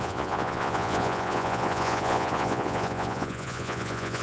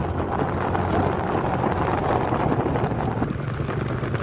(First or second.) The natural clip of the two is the second